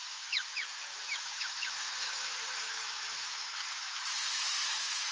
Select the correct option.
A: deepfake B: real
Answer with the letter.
A